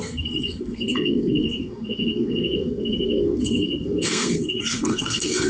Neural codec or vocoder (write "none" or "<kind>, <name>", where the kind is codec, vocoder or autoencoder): codec, SNAC